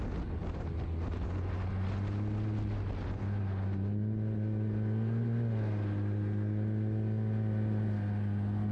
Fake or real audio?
real